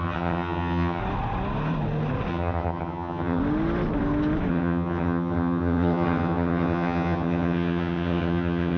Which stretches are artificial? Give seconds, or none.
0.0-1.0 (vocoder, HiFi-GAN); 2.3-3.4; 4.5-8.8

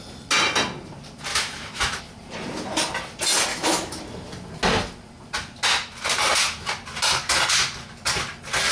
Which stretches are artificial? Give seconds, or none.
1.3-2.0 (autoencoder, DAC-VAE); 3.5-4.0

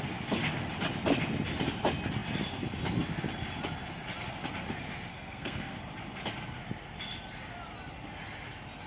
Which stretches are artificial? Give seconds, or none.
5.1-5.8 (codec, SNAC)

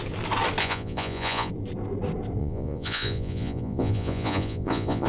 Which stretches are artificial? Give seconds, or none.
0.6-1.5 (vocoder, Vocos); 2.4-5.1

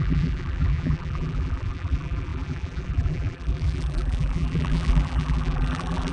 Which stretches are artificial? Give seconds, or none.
0.0-6.1 (vocoder, BigVGAN v2)

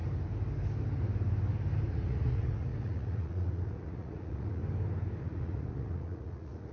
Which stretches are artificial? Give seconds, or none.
1.9-4.6 (vocoder, Vocos); 5.2-6.7

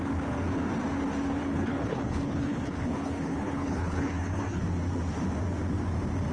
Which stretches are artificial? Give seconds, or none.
1.4-4.6 (codec, HILCodec)